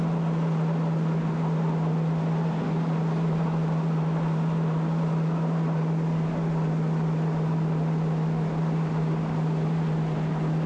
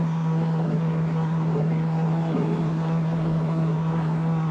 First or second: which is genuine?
first